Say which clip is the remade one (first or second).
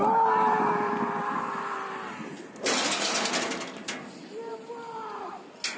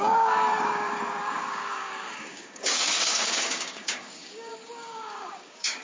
second